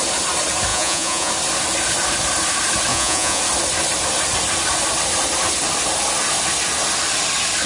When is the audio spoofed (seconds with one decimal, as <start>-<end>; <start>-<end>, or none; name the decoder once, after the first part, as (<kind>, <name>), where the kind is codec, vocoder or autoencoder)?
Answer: 0.7-1.3 (vocoder, Vocos); 2.9-3.4